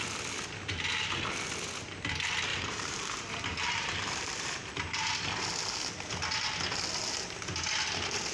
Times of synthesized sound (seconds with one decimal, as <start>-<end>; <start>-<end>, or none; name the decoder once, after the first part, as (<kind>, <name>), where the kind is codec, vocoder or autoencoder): 2.5-4.7 (vocoder, BigVGAN v2)